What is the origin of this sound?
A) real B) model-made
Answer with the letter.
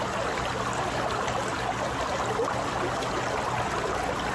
A